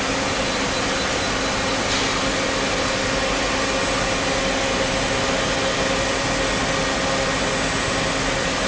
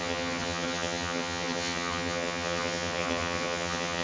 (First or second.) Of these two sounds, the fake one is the second